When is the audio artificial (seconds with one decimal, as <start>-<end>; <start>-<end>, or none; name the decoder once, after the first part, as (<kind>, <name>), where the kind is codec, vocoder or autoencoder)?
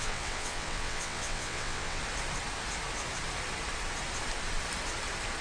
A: 0.0-2.0 (vocoder, WaveNeXt)